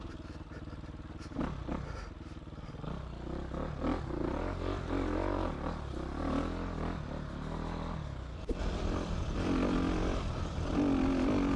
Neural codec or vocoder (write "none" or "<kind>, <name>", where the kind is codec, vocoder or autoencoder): none